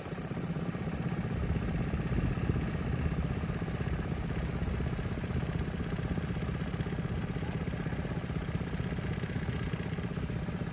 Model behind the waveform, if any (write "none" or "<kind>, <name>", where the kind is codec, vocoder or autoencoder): none